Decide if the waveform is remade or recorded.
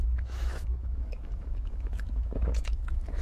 remade